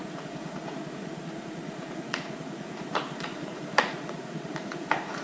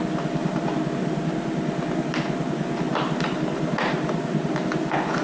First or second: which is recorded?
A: second